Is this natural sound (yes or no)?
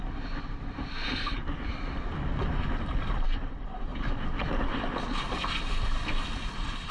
yes